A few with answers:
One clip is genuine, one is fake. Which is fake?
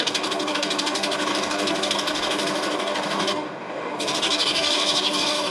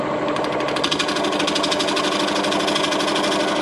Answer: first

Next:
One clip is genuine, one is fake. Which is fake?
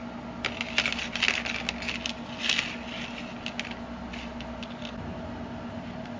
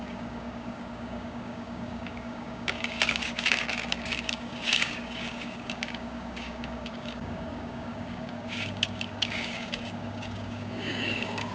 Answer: second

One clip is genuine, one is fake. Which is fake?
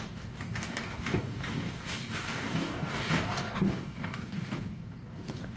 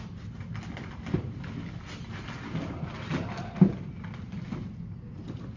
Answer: first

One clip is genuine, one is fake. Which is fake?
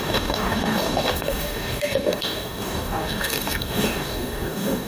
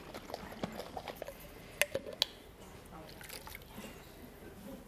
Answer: first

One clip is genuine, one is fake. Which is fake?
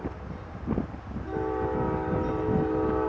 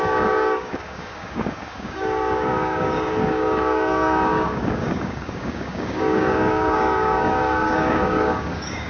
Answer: second